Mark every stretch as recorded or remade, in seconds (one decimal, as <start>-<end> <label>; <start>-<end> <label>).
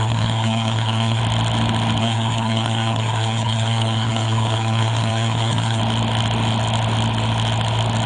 0.0-1.2 remade; 1.2-2.0 recorded; 2.0-5.8 remade; 5.8-8.1 recorded